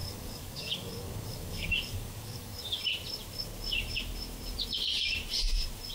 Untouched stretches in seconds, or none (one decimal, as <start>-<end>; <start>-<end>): 2.6-5.9